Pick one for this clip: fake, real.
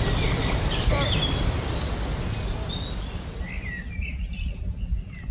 real